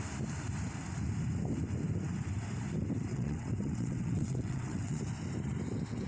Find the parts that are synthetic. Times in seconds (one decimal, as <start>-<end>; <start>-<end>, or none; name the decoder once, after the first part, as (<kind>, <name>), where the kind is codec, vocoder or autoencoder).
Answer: 3.1-5.0 (vocoder, WaveNeXt)